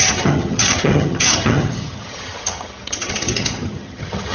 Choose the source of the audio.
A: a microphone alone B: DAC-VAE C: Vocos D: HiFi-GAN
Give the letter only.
D